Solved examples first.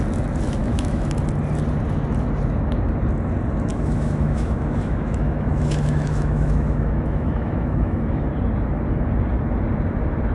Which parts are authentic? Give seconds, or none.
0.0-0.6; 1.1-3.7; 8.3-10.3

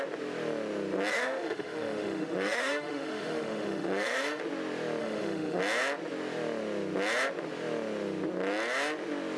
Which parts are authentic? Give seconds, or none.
0.0-1.1; 4.4-5.0; 5.6-9.4

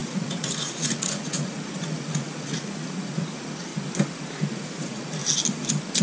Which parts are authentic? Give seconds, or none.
3.7-4.5; 5.2-6.0

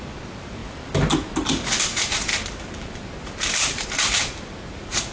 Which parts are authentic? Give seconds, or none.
0.6-1.8

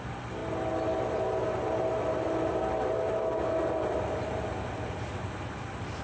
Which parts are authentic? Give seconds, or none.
0.0-6.0

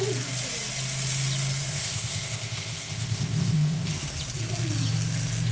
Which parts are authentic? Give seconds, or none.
0.0-1.7; 3.9-5.5

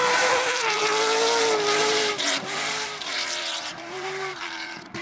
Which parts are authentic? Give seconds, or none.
0.8-1.8